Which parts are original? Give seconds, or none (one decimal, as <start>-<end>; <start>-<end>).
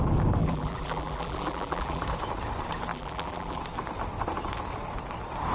0.0-0.4; 2.0-2.9; 3.6-5.5